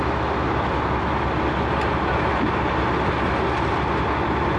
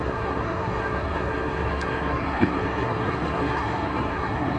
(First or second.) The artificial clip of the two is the second